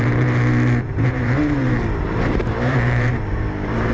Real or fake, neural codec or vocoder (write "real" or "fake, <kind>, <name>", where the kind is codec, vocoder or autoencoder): fake, vocoder, BigVGAN v2